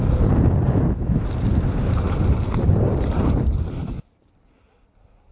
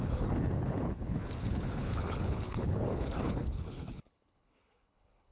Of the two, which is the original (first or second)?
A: first